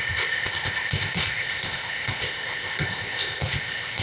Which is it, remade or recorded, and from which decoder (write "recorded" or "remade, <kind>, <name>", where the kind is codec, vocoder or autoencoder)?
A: remade, codec, ZipCodec